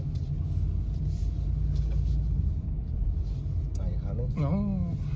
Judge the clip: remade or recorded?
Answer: recorded